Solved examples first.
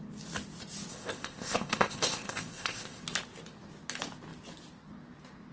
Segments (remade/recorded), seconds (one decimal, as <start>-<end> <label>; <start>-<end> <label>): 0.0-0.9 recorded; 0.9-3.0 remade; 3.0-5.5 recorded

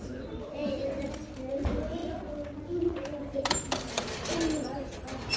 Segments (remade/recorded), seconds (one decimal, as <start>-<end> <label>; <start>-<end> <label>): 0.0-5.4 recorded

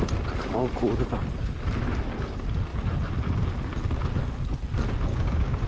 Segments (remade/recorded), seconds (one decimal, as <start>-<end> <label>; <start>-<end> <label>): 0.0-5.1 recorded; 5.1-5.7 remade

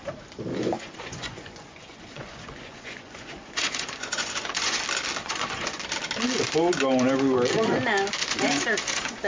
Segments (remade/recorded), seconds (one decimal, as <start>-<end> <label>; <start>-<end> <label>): 0.0-0.5 recorded; 0.5-4.8 remade; 4.8-5.2 recorded; 5.2-5.8 remade; 5.8-8.2 recorded; 8.2-9.3 remade

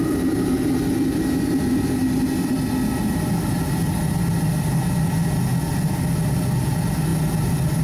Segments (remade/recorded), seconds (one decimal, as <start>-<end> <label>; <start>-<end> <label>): 0.0-7.8 recorded

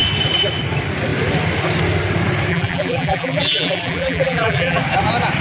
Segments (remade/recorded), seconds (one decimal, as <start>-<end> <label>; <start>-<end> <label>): 0.0-2.5 recorded; 2.5-4.8 remade; 4.8-5.4 recorded

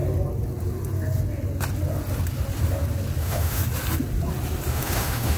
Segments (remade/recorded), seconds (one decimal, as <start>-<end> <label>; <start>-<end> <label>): 0.0-3.2 recorded; 3.2-3.6 remade; 3.6-4.7 recorded; 4.7-5.4 remade

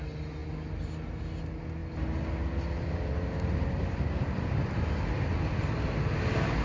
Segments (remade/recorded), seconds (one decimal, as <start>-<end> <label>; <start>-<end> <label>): 0.0-6.6 recorded